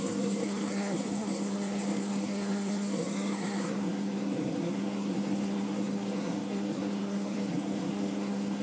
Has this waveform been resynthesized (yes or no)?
yes